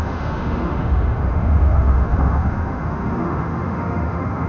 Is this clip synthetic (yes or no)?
yes